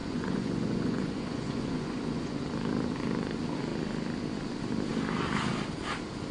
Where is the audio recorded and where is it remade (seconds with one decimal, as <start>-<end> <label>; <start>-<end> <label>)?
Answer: 0.0-2.4 remade; 2.4-6.3 recorded